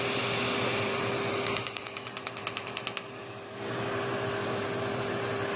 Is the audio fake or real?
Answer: real